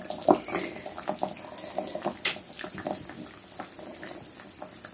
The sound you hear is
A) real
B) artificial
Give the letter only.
A